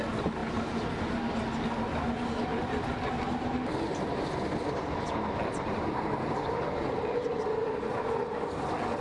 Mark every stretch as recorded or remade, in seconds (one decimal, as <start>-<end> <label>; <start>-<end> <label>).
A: 0.0-9.0 recorded